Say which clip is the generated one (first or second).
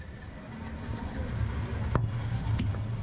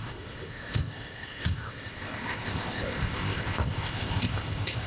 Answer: second